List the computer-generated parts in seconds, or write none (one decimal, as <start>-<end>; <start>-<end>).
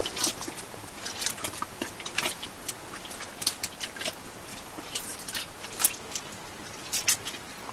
0.0-2.7; 4.5-5.4